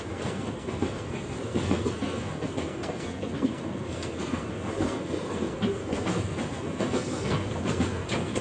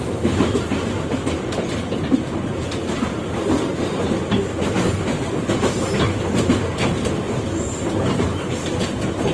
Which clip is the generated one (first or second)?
first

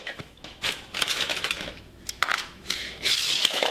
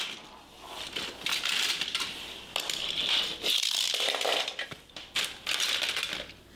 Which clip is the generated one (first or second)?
first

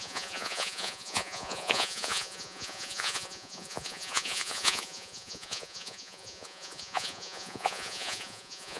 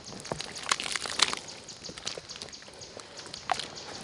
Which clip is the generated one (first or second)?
first